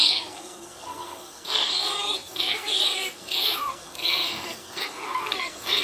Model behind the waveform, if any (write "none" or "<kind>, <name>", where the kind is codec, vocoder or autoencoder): codec, SNAC